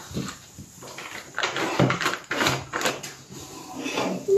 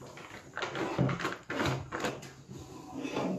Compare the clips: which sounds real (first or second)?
second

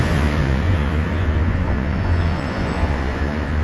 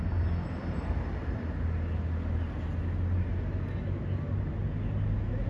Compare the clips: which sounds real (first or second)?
second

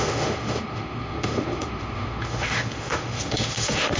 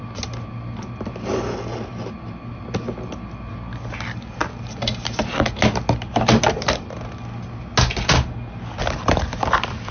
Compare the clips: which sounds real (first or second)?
second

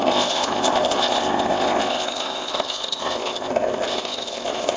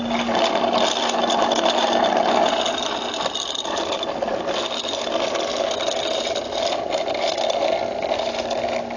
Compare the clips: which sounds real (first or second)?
second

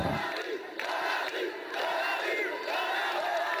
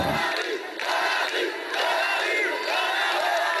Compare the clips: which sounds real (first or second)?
second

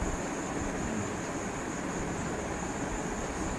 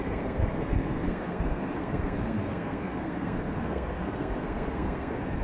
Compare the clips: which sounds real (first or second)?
first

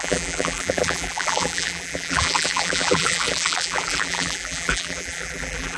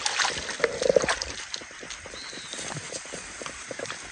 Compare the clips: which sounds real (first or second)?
second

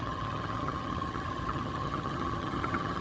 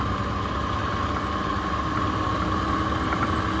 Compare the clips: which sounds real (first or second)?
second